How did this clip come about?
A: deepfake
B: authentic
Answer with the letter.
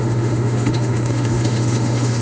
A